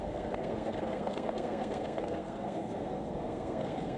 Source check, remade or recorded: remade